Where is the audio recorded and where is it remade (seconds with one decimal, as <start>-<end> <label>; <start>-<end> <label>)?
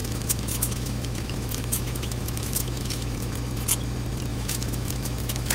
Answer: 0.0-3.3 remade; 3.3-4.3 recorded; 4.3-5.5 remade